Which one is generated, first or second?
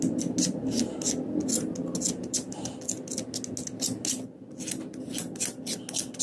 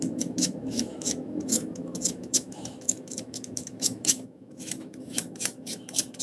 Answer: second